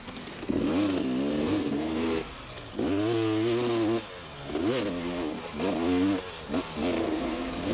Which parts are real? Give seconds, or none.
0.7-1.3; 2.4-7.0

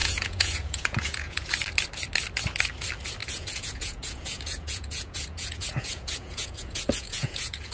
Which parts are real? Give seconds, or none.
1.5-3.2

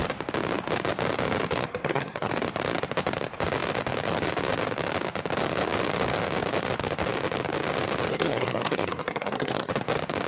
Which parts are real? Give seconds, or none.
0.0-1.6; 2.3-8.1; 9.7-10.3

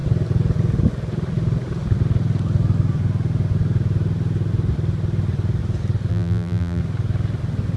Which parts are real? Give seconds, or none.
0.0-6.1; 6.8-7.8

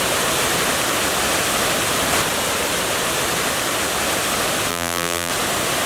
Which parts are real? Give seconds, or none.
0.0-4.7; 5.3-5.9

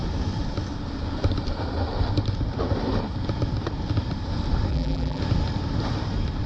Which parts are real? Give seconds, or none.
0.0-4.7; 5.2-6.5

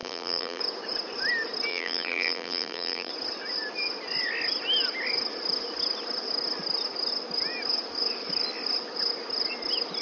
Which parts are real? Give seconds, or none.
0.6-1.7; 3.1-10.0